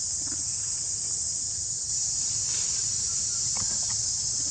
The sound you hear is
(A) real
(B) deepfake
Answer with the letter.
A